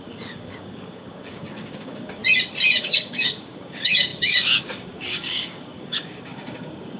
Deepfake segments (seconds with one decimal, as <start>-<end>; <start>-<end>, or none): 0.0-2.2; 2.8-7.0